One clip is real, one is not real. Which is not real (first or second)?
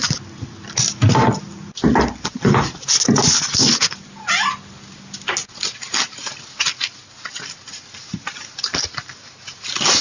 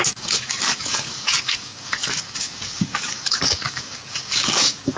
second